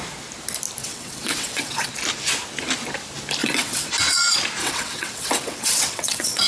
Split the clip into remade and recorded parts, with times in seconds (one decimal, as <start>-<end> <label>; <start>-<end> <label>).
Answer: 0.0-0.8 recorded; 0.8-1.9 remade; 1.9-3.4 recorded; 3.4-3.9 remade; 3.9-4.6 recorded; 4.6-6.5 remade